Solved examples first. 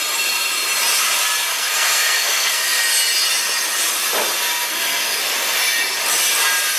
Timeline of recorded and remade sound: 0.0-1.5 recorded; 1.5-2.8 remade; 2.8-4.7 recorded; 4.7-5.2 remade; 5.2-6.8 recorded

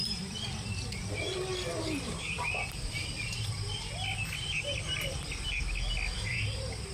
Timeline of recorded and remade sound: 0.0-1.5 recorded; 1.5-5.6 remade; 5.6-6.9 recorded

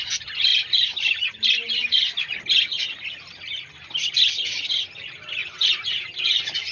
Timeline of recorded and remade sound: 0.0-6.7 recorded

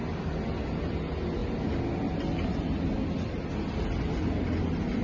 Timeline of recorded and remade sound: 0.0-5.0 recorded